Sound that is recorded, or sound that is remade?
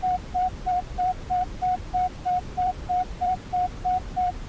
remade